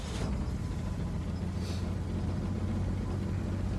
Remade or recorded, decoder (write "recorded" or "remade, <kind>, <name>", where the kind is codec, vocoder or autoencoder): recorded